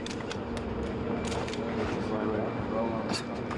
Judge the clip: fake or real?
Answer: real